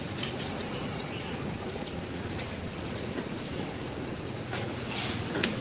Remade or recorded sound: remade